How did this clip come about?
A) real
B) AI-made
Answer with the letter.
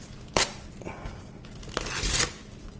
A